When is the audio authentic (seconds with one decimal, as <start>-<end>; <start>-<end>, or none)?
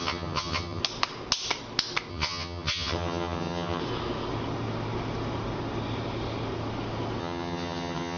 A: 0.8-2.1; 3.8-7.2